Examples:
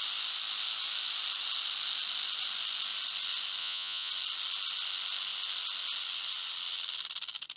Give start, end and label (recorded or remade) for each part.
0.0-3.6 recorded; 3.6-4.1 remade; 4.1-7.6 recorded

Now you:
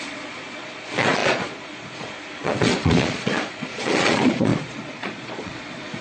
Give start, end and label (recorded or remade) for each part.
0.0-6.0 remade

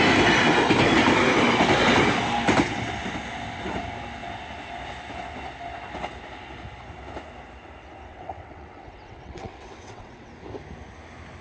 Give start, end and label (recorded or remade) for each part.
0.0-8.1 recorded; 8.1-10.3 remade; 10.3-11.4 recorded

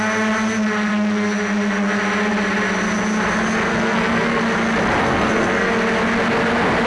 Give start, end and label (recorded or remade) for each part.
0.0-3.7 recorded; 3.7-4.4 remade; 4.4-5.0 recorded; 5.0-5.7 remade; 5.7-6.9 recorded